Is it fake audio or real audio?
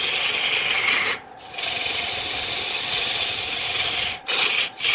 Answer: real